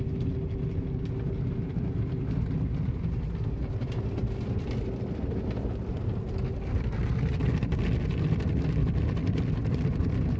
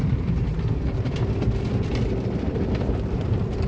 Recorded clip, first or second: first